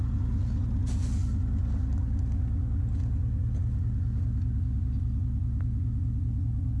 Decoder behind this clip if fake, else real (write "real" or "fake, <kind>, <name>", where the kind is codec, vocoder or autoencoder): real